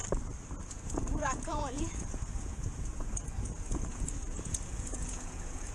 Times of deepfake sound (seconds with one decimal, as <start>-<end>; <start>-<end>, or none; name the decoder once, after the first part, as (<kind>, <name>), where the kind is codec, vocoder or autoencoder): 0.7-5.7 (vocoder, Vocos)